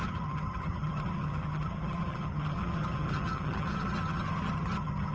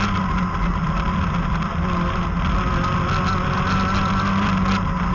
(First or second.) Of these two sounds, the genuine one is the second